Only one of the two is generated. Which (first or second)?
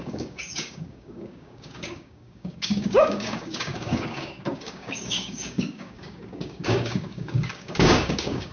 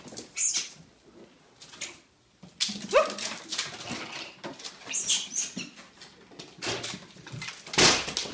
first